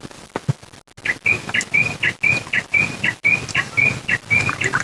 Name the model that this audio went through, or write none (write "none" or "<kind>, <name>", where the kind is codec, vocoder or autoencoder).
none